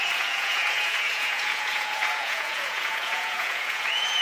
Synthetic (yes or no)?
yes